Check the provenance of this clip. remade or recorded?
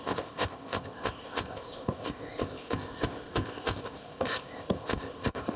remade